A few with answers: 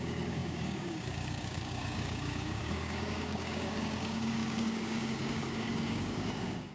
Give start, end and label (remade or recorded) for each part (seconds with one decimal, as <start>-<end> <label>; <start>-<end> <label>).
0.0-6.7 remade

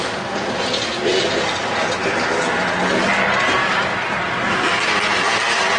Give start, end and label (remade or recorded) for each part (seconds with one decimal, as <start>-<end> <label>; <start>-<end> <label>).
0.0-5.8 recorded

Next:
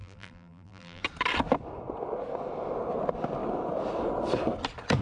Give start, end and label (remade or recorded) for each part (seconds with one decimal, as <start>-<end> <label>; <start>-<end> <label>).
0.0-1.0 remade; 1.0-5.0 recorded

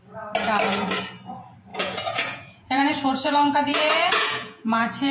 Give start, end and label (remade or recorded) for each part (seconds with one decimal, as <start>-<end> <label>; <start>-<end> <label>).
0.0-1.7 recorded; 1.7-5.1 remade

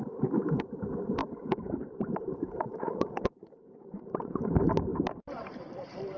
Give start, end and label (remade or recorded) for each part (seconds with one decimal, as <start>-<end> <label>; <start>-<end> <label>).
0.0-1.2 recorded; 1.2-4.5 remade; 4.5-4.9 recorded; 4.9-6.2 remade

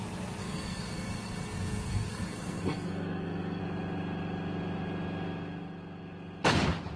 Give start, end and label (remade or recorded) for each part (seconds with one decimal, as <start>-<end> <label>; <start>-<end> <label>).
0.0-0.4 recorded; 0.4-3.6 remade; 3.6-7.0 recorded